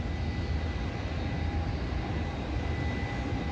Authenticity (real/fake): real